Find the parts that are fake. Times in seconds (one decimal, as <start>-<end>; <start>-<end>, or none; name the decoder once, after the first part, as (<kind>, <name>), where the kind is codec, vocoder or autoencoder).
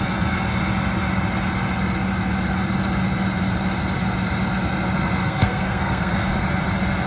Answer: 5.2-6.3 (codec, SNAC)